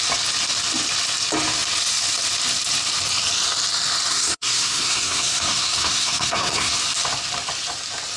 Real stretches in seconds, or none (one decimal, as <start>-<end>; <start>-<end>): 0.0-4.1; 6.7-8.2